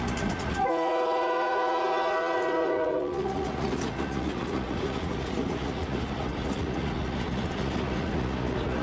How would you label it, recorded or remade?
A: remade